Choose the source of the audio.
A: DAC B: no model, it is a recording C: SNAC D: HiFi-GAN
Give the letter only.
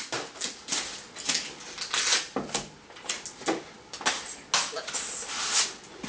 B